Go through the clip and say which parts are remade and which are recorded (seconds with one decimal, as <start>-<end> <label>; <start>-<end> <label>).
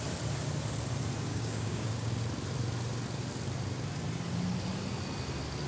0.0-1.3 recorded; 1.3-2.1 remade; 2.1-5.7 recorded